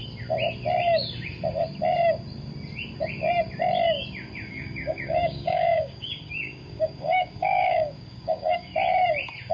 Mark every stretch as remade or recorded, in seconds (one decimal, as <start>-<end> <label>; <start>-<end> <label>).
0.0-4.5 recorded; 4.5-8.7 remade; 8.7-9.5 recorded